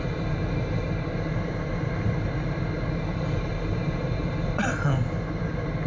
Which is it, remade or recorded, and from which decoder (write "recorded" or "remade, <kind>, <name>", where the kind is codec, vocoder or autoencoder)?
remade, vocoder, BigVGAN v2